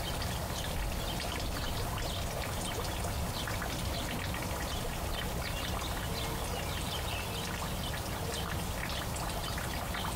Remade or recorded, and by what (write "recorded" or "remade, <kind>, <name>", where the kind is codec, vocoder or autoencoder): recorded